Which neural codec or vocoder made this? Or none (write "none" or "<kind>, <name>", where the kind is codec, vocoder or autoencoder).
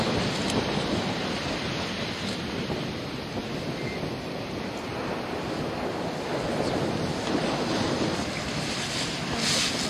none